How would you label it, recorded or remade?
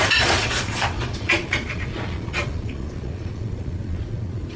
remade